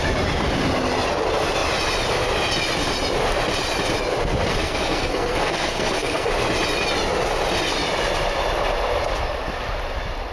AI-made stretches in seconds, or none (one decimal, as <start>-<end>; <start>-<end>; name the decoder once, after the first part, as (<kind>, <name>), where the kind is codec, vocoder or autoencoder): 4.5-6.3 (codec, SNAC)